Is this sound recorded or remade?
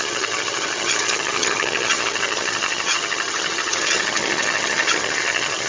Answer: remade